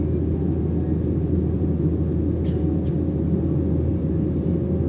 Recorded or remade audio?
recorded